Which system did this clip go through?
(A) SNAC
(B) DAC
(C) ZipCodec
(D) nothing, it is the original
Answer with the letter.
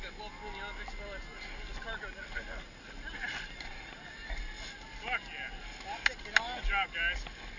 D